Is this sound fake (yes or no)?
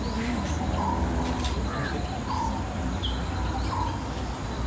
no